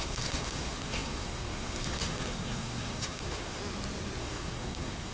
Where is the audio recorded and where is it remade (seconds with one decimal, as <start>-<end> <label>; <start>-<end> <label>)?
0.0-3.6 remade; 3.6-4.2 recorded; 4.2-5.1 remade